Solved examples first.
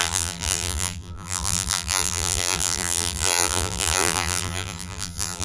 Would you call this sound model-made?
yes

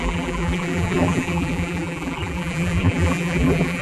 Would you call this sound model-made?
yes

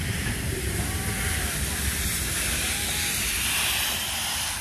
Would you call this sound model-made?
yes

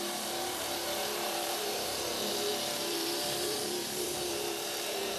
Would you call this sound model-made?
yes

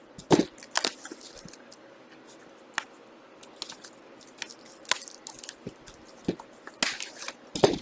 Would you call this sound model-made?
no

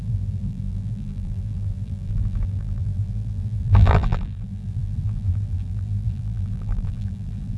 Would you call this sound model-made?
yes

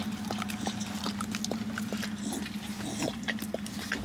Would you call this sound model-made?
no